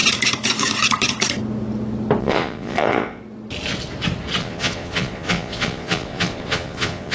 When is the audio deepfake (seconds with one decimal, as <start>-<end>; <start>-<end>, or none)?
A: 2.2-3.2; 4.4-7.1